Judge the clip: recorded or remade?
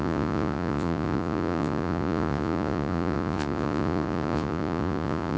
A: remade